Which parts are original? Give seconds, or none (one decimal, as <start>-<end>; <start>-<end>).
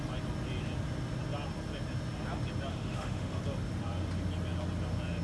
0.0-2.7; 3.4-5.2